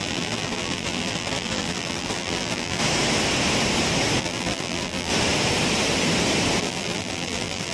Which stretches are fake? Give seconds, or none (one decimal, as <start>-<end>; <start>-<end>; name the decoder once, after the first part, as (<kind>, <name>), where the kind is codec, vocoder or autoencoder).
0.0-2.8 (vocoder, BigVGAN v2); 4.2-5.1; 6.6-7.7